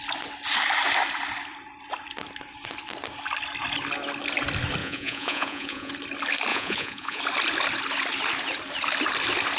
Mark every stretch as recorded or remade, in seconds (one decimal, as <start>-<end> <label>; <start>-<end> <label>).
0.0-4.8 recorded; 4.8-5.9 remade; 5.9-6.5 recorded; 6.5-7.2 remade; 7.2-9.6 recorded